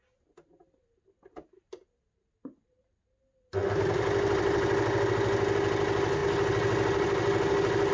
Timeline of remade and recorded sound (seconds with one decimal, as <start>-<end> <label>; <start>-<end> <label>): 0.0-7.9 recorded